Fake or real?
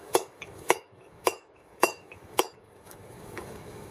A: fake